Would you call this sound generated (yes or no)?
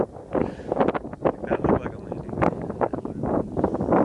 no